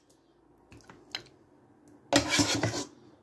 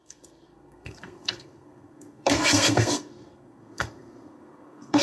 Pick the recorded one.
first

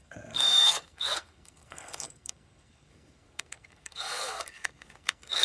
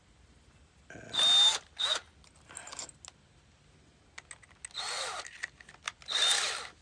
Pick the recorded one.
second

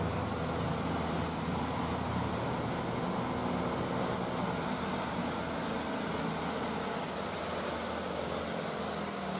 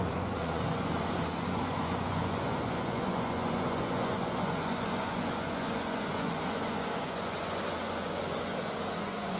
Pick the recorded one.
first